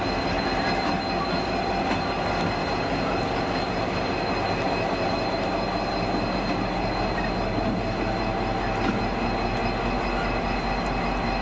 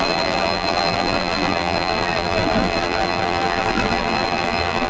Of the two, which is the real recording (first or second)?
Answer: first